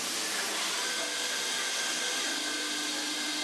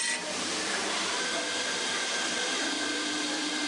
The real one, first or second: first